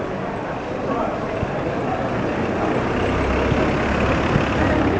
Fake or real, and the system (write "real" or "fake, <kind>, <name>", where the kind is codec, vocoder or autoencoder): real